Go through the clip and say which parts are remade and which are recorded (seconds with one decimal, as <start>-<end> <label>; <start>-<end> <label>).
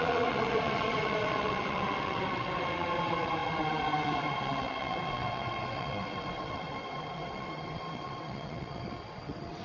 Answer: 0.0-9.6 remade